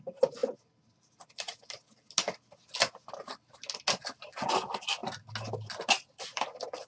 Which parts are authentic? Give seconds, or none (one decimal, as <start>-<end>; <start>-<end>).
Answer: 0.0-6.9